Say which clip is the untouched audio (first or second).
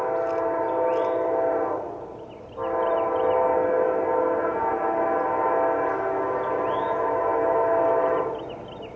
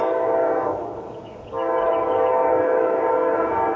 first